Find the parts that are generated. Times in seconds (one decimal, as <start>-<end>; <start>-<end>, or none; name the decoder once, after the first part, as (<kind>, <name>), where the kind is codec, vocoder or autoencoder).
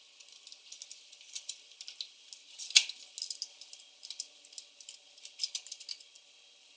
none